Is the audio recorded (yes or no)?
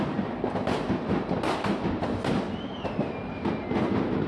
yes